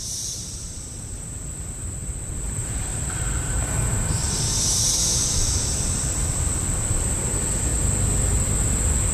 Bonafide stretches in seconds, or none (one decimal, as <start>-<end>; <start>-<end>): 7.7-9.1

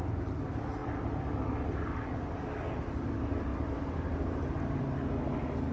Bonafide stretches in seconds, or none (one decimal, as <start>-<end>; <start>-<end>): 0.0-3.5; 4.8-5.7